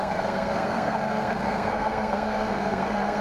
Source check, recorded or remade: remade